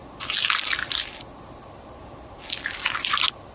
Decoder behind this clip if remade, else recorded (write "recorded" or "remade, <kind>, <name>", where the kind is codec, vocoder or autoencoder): recorded